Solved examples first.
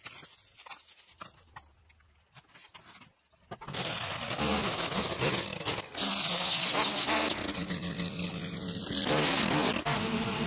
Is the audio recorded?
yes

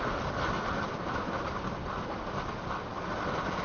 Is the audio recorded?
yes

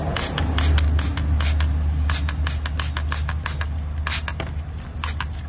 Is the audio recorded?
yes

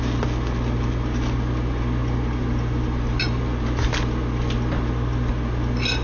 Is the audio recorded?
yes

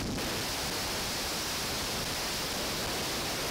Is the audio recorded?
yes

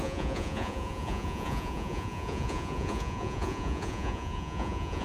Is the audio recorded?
no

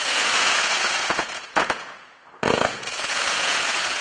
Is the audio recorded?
no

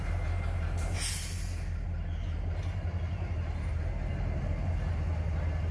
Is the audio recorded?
yes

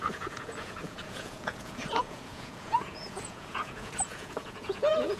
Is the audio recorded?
no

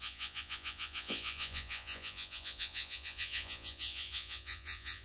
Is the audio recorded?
no